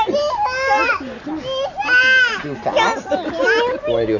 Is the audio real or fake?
real